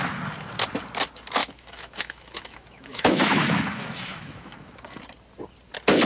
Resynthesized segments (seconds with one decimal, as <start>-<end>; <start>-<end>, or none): 1.4-5.0